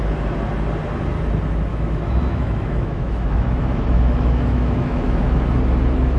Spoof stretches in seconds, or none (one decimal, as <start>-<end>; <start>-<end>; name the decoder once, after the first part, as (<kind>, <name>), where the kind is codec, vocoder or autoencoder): 1.7-5.4 (autoencoder, DAC-VAE)